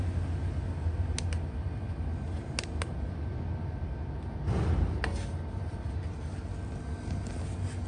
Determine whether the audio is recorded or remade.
recorded